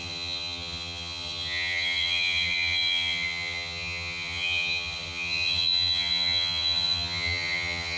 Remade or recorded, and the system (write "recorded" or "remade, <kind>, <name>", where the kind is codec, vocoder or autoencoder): remade, vocoder, HiFi-GAN